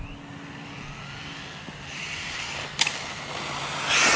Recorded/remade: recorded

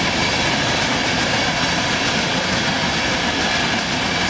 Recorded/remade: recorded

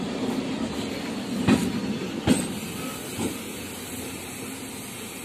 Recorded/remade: recorded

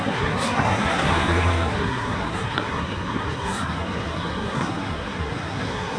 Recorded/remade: remade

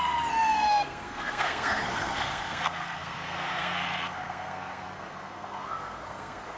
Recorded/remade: remade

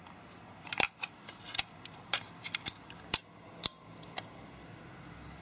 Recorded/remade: recorded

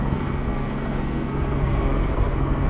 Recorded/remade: remade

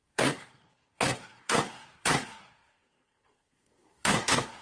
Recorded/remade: remade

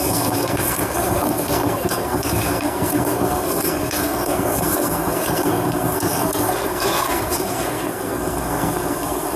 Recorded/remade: remade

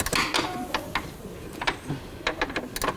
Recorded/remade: recorded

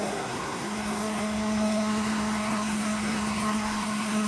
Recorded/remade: remade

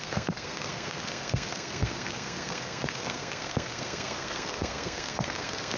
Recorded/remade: remade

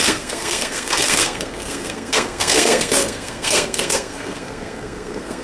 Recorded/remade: remade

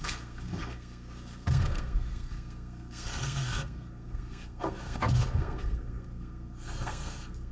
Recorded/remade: remade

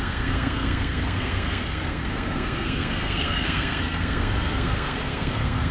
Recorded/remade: remade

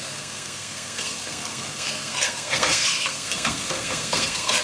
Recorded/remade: remade